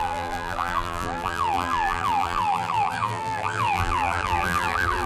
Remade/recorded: remade